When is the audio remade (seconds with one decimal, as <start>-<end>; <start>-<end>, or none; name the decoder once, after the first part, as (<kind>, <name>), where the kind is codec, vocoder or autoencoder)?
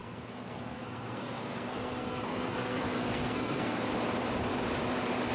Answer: 0.0-3.9 (codec, SNAC)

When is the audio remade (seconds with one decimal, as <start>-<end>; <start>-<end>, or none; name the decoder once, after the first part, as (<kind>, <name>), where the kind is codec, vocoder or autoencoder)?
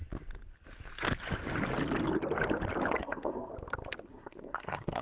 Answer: 3.0-3.5 (codec, SNAC); 4.1-5.0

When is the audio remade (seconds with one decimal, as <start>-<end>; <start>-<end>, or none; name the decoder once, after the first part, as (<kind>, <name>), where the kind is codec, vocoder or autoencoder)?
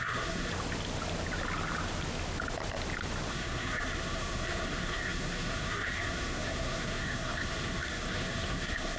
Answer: 0.0-0.5 (codec, SNAC); 3.3-9.0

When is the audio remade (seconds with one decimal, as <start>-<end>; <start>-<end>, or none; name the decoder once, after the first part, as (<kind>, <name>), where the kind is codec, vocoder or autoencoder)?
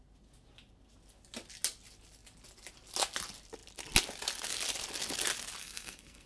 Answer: 5.6-6.3 (codec, SNAC)